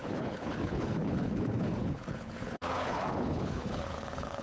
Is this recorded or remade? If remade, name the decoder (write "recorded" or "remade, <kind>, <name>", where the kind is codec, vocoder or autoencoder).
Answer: remade, codec, HILCodec